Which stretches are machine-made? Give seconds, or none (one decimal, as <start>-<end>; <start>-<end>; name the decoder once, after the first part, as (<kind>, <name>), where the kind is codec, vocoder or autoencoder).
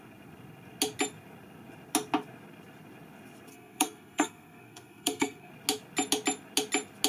3.5-5.5 (codec, SNAC)